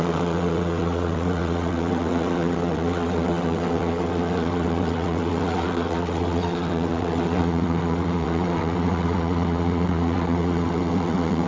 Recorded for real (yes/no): no